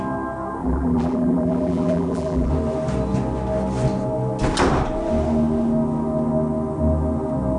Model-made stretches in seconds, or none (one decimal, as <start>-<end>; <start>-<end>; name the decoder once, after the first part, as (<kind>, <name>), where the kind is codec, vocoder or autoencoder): 0.6-2.5 (vocoder, BigVGAN v2)